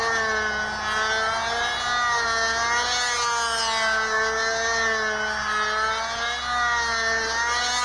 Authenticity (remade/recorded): recorded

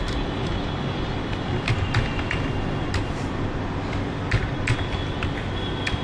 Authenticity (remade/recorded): recorded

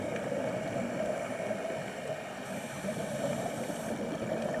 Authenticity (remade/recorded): recorded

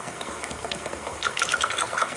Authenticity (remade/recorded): remade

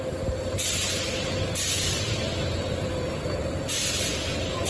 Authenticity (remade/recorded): remade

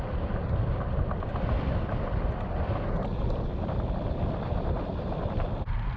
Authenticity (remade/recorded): recorded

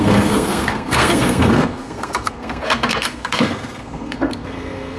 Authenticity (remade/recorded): remade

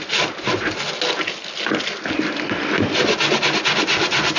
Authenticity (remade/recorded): recorded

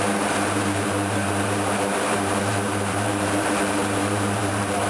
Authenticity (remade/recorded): remade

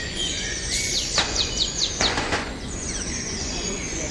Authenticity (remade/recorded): remade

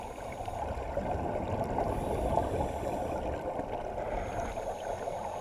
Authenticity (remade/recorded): recorded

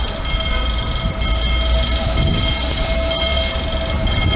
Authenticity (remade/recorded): recorded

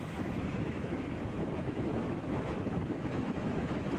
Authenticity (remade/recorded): remade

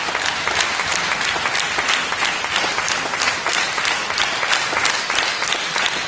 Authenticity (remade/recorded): recorded